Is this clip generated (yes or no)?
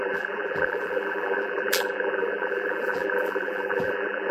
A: yes